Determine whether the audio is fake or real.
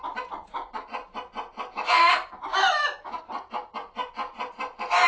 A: real